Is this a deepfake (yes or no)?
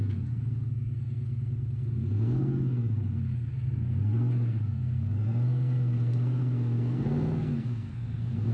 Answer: yes